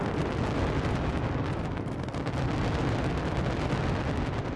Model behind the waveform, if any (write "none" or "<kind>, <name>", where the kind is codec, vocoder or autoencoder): none